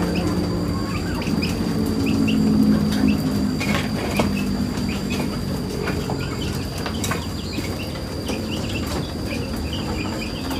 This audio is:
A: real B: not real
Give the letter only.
A